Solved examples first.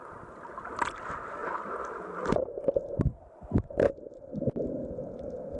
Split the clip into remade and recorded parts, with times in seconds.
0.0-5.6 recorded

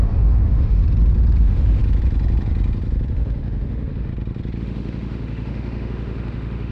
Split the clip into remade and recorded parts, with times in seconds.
0.0-0.8 remade; 0.8-1.4 recorded; 1.4-1.8 remade; 1.8-3.1 recorded; 3.1-4.1 remade; 4.1-4.6 recorded; 4.6-6.7 remade

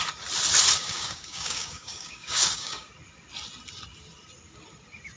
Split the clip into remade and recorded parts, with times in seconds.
0.0-0.8 recorded; 0.8-2.9 remade; 2.9-5.2 recorded

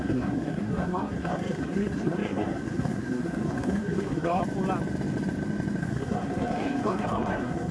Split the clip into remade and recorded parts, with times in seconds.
0.0-4.4 remade; 4.4-5.8 recorded; 5.8-7.7 remade

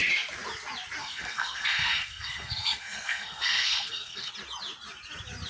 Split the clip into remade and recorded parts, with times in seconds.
0.0-1.0 recorded; 1.0-4.3 remade; 4.3-5.5 recorded